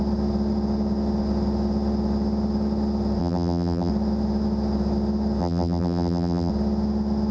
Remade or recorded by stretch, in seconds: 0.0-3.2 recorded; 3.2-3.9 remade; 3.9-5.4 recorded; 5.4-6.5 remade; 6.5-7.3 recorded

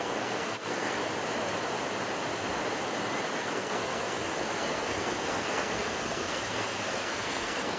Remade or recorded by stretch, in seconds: 0.0-1.0 remade; 1.0-3.4 recorded; 3.4-7.8 remade

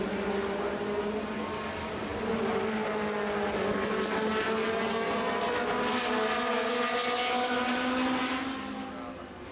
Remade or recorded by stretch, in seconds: 0.0-9.5 recorded

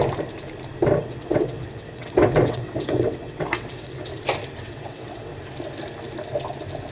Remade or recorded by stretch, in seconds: 0.0-1.0 recorded; 1.0-4.1 remade; 4.1-4.6 recorded; 4.6-5.3 remade; 5.3-6.9 recorded

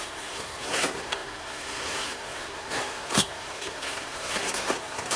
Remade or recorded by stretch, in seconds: 0.0-5.2 remade

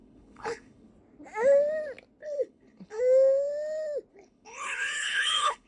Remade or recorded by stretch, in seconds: 0.0-0.9 remade; 0.9-2.2 recorded; 2.2-3.0 remade; 3.0-4.1 recorded; 4.1-5.7 remade